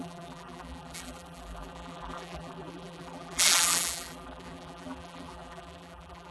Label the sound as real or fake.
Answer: fake